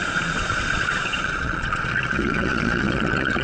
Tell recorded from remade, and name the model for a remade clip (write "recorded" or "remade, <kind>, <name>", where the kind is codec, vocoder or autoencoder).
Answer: remade, vocoder, Vocos